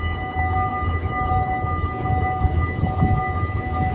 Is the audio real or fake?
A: fake